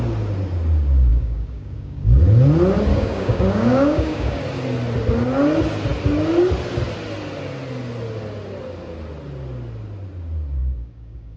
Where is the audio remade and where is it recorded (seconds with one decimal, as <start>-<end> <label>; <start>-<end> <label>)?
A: 0.0-1.1 recorded; 1.1-2.2 remade; 2.2-2.9 recorded; 2.9-4.4 remade; 4.4-10.6 recorded; 10.6-11.4 remade